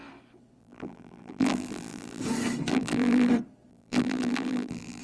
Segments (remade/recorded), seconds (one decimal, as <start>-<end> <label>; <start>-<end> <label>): 0.0-0.6 recorded; 0.6-2.2 remade; 2.2-2.7 recorded; 2.7-3.3 remade; 3.3-3.7 recorded; 3.7-5.0 remade